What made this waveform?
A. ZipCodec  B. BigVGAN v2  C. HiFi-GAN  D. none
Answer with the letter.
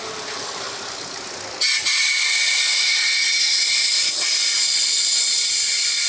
D